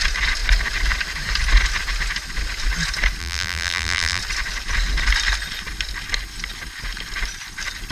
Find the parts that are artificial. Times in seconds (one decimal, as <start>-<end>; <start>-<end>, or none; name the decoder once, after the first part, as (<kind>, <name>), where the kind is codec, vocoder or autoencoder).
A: 3.2-4.2 (vocoder, BigVGAN v2)